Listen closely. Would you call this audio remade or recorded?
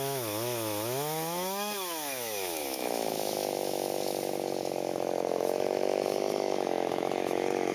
remade